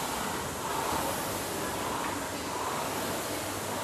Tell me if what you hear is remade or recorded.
recorded